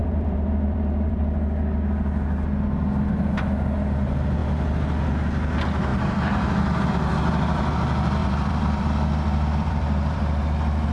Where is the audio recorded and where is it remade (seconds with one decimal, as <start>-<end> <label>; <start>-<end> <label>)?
0.0-1.2 remade; 1.2-5.9 recorded; 5.9-6.9 remade; 6.9-8.2 recorded; 8.2-10.4 remade; 10.4-10.9 recorded